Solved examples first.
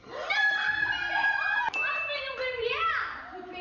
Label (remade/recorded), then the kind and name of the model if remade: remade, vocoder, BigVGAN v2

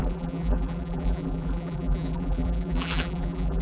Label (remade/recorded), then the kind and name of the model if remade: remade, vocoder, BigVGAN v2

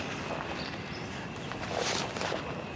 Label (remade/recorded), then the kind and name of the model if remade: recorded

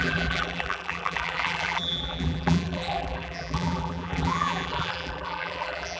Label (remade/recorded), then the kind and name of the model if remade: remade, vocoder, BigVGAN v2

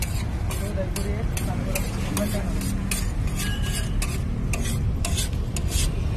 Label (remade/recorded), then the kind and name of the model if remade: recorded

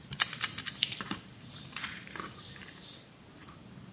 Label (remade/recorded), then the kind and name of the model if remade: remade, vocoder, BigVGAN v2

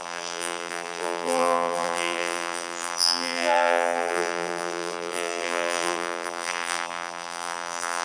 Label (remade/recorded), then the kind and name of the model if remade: remade, vocoder, BigVGAN v2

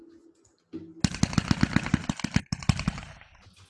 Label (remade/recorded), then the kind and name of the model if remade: recorded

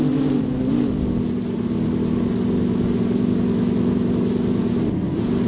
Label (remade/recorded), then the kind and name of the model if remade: recorded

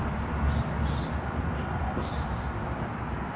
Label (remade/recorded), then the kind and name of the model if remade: recorded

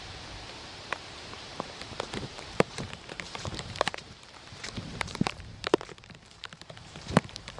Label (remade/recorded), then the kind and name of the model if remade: remade, vocoder, BigVGAN v2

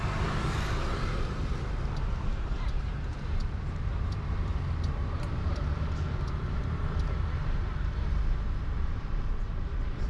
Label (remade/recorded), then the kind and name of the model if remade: remade, vocoder, BigVGAN v2